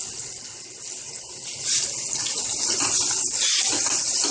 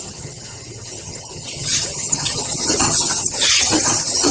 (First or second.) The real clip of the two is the first